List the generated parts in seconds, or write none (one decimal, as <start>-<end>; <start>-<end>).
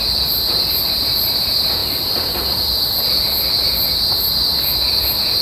none